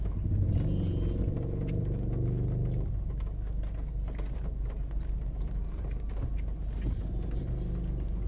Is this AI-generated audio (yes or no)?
no